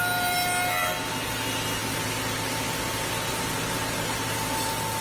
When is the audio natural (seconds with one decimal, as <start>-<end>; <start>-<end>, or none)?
0.0-5.0